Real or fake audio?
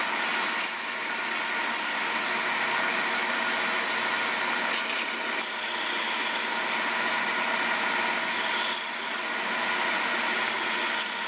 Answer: real